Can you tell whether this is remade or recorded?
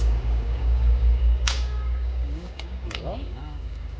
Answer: remade